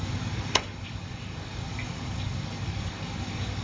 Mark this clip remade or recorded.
remade